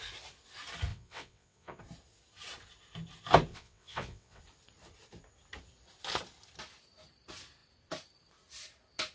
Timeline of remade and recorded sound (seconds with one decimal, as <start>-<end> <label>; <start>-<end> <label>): 0.0-0.9 recorded; 0.9-1.8 remade; 1.8-3.5 recorded; 3.5-4.4 remade; 4.4-9.1 recorded